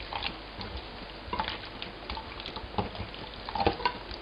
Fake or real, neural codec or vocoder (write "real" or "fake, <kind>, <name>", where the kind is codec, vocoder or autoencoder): real